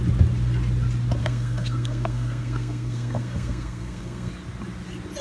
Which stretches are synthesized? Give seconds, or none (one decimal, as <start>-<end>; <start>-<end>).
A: 1.2-4.3